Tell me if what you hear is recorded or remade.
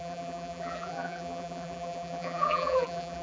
remade